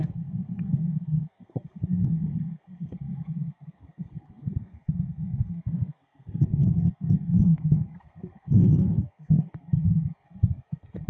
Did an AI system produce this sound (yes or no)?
yes